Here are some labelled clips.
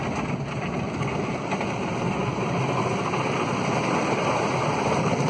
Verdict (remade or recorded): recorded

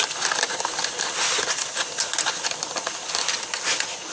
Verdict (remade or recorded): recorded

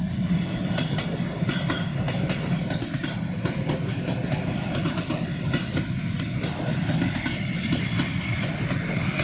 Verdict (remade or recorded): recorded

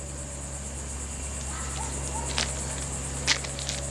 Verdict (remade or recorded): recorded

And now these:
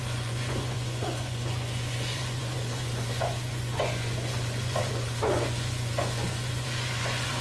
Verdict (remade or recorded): remade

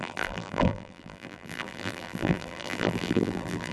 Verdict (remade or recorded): remade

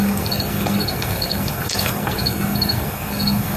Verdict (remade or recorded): remade